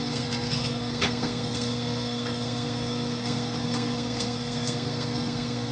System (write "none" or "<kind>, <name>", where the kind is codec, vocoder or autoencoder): codec, SNAC